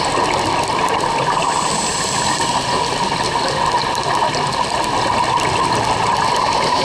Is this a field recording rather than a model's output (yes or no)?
yes